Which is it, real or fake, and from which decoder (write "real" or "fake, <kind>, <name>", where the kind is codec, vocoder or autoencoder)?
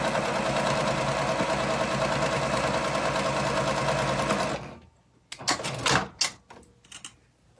real